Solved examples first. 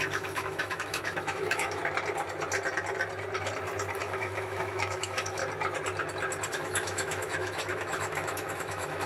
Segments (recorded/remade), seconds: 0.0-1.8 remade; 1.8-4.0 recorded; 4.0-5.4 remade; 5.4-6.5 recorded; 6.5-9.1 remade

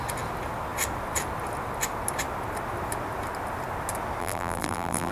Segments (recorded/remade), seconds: 0.0-4.2 recorded; 4.2-5.1 remade